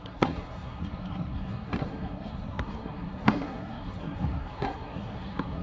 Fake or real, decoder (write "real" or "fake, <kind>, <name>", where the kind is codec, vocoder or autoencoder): fake, codec, SNAC